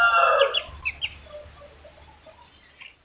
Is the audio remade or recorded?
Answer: recorded